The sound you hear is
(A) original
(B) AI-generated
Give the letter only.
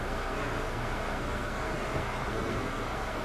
B